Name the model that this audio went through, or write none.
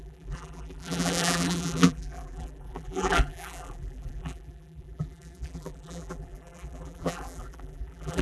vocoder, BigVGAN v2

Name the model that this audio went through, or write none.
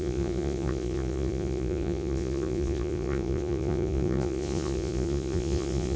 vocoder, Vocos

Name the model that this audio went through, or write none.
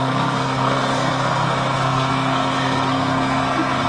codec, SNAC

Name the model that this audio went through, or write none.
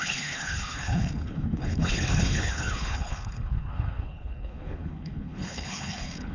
codec, HILCodec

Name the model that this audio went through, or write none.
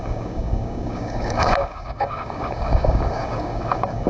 codec, DAC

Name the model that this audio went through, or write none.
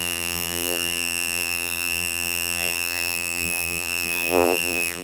vocoder, BigVGAN v2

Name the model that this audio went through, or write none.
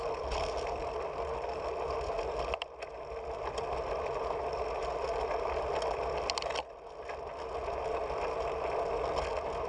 none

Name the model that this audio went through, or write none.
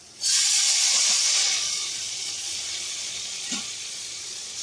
vocoder, Vocos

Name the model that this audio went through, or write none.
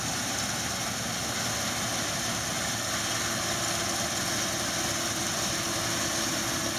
none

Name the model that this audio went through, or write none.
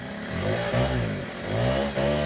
none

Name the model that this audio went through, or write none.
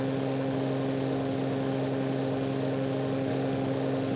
autoencoder, DAC-VAE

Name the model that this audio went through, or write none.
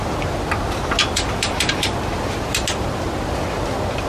none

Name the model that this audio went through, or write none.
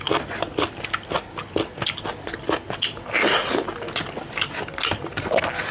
none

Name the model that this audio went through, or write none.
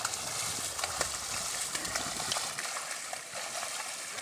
none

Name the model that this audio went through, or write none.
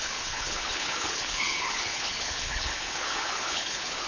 codec, HILCodec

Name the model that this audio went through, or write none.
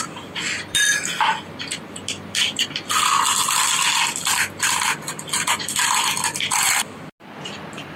none